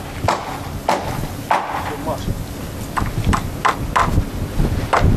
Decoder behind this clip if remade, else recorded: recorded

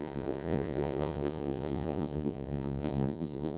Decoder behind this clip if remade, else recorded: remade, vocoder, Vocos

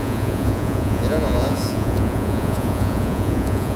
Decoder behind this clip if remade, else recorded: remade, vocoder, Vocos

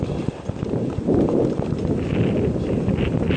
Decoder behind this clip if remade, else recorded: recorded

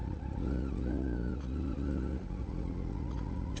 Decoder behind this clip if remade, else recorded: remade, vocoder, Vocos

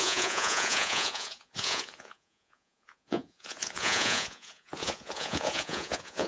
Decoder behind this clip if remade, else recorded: remade, vocoder, Vocos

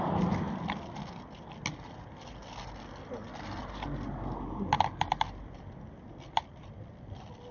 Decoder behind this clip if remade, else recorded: recorded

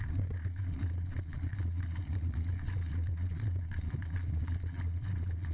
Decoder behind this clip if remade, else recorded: remade, vocoder, Vocos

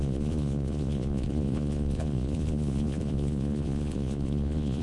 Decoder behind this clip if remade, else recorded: remade, vocoder, Vocos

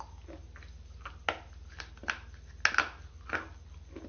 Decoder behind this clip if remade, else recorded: recorded